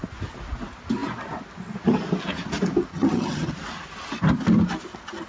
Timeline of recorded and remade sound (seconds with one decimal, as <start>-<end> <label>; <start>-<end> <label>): 0.0-2.9 recorded; 2.9-3.5 remade; 3.5-5.3 recorded